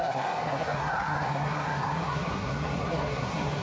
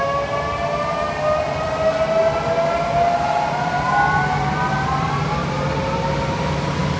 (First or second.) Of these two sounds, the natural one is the second